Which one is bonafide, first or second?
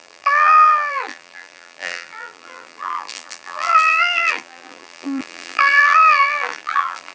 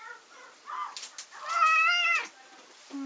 second